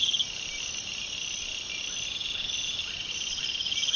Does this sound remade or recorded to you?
recorded